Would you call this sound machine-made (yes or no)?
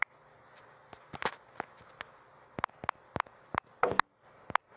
no